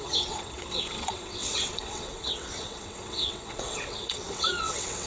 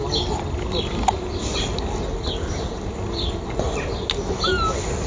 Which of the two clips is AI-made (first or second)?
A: first